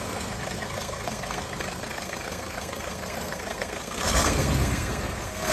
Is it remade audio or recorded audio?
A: remade